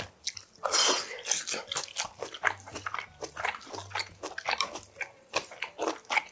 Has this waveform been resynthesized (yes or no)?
no